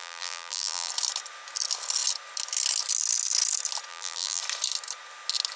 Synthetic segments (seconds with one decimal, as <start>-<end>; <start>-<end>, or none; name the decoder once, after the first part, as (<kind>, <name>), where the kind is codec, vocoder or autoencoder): 0.0-0.9 (vocoder, BigVGAN v2); 3.9-4.4